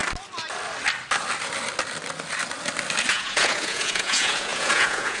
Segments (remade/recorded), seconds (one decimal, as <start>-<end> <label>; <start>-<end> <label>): 0.0-3.1 recorded; 3.1-5.2 remade